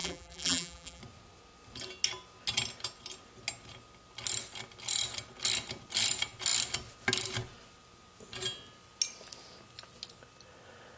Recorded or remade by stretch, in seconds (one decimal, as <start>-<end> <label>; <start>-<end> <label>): 0.0-1.0 remade; 1.0-11.0 recorded